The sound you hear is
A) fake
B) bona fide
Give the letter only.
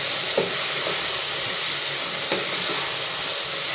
B